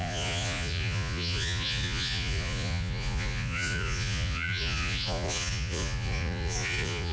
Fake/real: fake